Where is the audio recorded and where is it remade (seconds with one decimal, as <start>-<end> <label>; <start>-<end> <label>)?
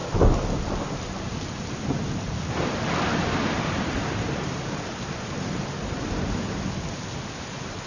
0.0-3.2 recorded; 3.2-6.6 remade; 6.6-7.9 recorded